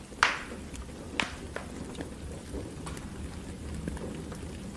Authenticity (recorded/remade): recorded